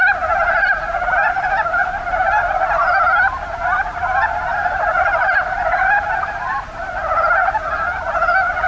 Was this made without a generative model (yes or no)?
yes